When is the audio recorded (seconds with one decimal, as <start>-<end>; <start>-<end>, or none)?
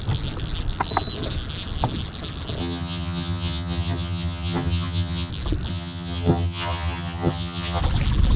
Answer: 0.0-2.6; 5.3-5.7; 7.8-8.4